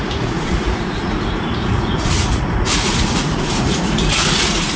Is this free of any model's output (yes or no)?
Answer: no